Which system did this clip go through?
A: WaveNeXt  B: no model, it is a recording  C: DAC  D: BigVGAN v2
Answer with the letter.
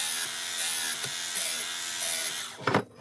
B